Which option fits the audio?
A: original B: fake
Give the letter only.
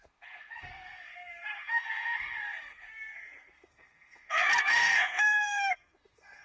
B